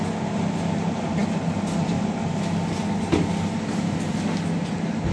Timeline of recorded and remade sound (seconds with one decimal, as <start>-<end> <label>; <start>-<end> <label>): 0.0-5.1 recorded